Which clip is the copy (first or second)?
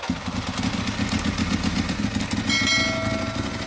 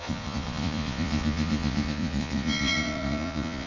second